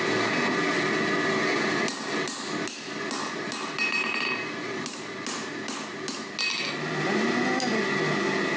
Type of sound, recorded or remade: recorded